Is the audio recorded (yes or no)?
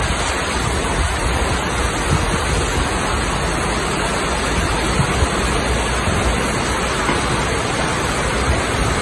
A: yes